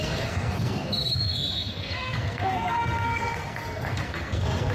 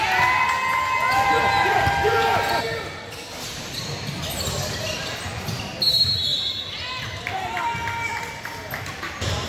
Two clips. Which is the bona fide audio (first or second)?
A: second